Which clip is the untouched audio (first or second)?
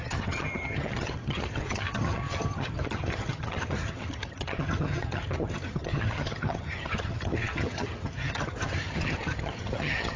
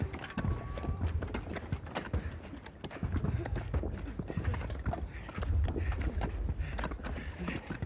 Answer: second